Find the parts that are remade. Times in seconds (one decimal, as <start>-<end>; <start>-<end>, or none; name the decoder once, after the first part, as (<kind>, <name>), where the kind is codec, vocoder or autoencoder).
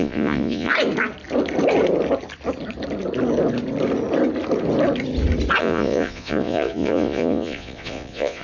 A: 0.0-0.7 (vocoder, Vocos); 5.6-8.4